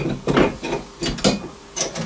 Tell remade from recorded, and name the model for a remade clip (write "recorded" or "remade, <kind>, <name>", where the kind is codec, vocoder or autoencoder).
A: recorded